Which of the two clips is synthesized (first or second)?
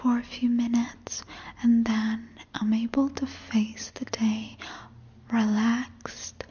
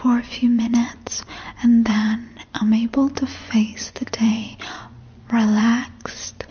second